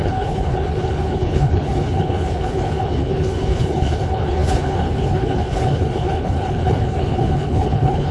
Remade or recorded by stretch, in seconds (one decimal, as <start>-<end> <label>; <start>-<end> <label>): 0.0-8.1 remade